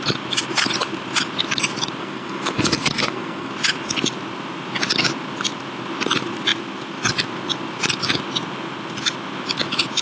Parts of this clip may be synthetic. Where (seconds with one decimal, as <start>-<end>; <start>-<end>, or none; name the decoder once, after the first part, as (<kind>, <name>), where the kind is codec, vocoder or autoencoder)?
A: 2.0-3.5 (codec, SNAC)